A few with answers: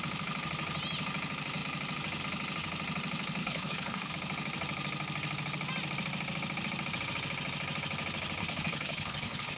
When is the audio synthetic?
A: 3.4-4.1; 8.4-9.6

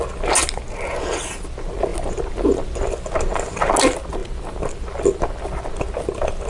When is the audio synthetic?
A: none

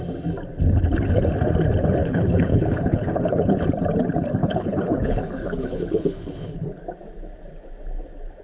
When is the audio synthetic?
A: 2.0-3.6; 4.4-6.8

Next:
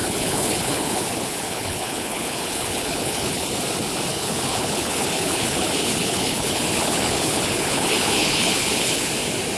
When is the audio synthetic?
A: 0.0-3.6; 4.1-9.1